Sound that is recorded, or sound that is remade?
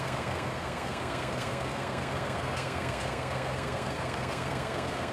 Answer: remade